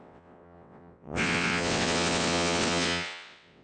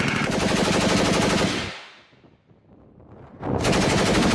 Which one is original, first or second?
second